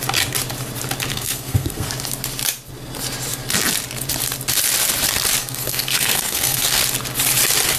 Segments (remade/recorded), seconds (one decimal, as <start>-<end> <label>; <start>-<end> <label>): 0.0-1.1 recorded; 1.1-1.9 remade; 1.9-5.4 recorded; 5.4-6.8 remade; 6.8-7.8 recorded

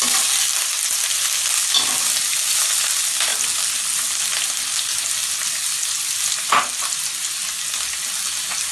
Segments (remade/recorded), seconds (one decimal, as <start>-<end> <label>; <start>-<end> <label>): 0.0-8.7 recorded

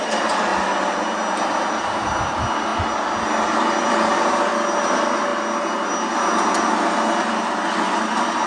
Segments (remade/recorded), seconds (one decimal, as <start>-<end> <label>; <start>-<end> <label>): 0.0-8.5 recorded

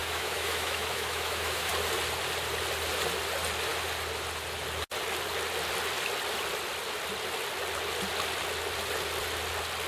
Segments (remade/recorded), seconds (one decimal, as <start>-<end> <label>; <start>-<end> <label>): 0.0-1.7 remade; 1.7-9.9 recorded

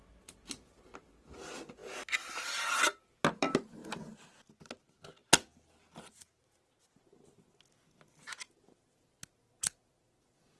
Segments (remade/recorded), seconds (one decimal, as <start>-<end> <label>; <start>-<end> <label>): 0.0-10.6 recorded

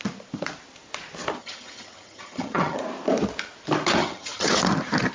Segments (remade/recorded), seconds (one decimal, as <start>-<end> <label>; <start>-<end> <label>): 0.0-1.4 recorded; 1.4-2.8 remade; 2.8-4.0 recorded; 4.0-4.5 remade; 4.5-5.1 recorded

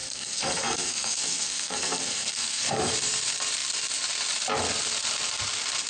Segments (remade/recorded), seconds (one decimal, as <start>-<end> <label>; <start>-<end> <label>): 0.0-2.9 remade; 2.9-5.9 recorded

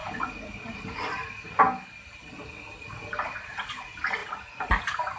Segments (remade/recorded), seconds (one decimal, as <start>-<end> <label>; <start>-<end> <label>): 0.0-4.2 recorded; 4.2-4.8 remade; 4.8-5.2 recorded